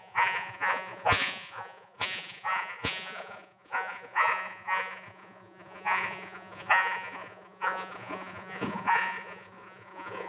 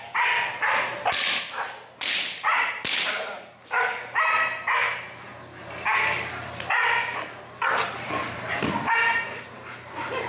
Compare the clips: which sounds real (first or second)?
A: second